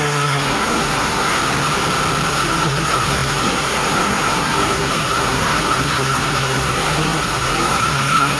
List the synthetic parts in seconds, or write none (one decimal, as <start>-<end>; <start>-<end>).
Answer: 0.0-1.4; 2.3-8.4